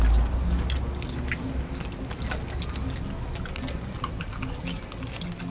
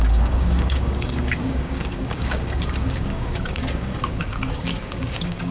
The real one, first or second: first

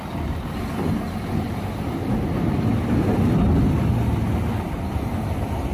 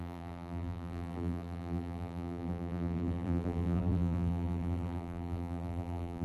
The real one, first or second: first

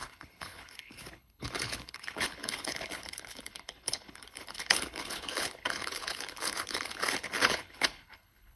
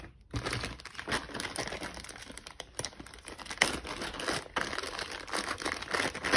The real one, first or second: second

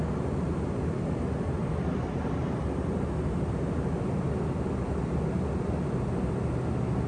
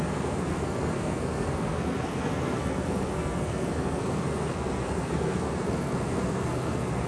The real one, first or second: first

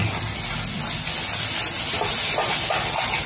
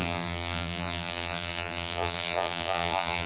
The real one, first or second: first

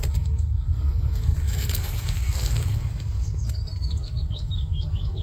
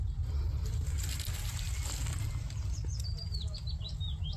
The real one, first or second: second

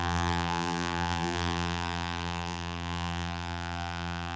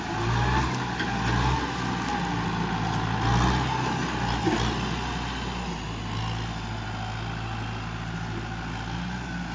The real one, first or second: second